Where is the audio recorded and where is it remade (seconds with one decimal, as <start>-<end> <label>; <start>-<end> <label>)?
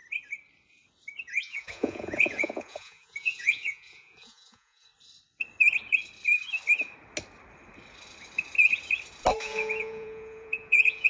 0.0-1.2 recorded; 1.2-4.9 remade; 4.9-9.4 recorded; 9.4-11.1 remade